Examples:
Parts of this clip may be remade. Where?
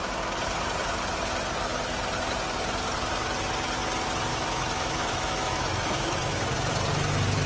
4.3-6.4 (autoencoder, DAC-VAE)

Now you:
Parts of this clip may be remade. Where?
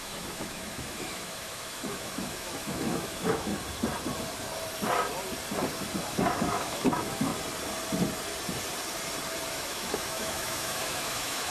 0.0-3.5 (autoencoder, DAC-VAE); 6.0-7.3; 9.5-11.5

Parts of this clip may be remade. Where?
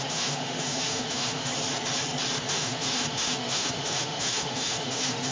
0.0-1.5 (autoencoder, DAC-VAE); 2.4-5.3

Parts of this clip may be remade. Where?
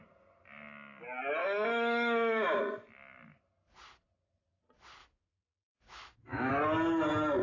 1.4-2.6 (autoencoder, DAC-VAE); 5.0-6.5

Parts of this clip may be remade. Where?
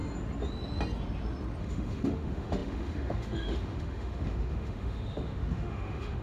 1.6-6.2 (autoencoder, DAC-VAE)